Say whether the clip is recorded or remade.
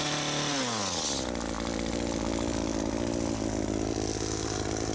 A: recorded